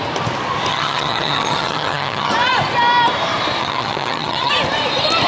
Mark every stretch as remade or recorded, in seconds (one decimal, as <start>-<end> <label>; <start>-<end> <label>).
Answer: 0.0-0.7 recorded; 0.7-2.3 remade; 2.3-3.6 recorded; 3.6-4.5 remade; 4.5-5.3 recorded